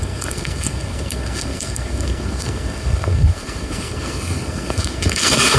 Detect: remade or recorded remade